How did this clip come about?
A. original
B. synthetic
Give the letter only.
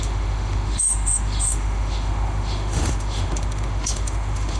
B